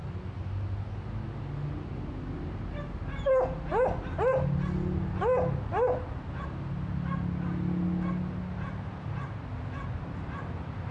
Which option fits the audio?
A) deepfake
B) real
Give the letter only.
B